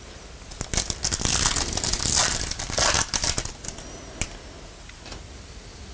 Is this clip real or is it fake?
real